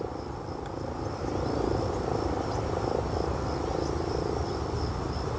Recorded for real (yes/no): yes